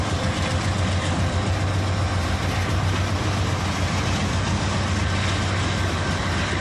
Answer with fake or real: real